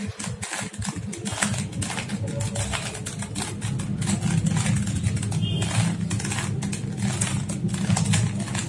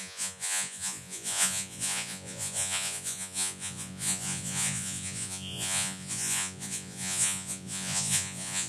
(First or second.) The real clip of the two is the first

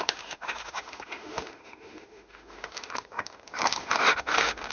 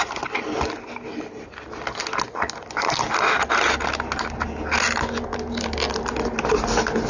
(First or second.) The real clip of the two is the second